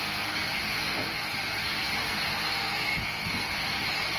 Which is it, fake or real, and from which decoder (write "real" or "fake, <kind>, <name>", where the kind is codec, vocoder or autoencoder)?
fake, codec, SNAC